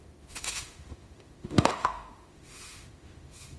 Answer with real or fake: fake